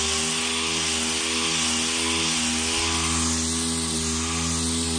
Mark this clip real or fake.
real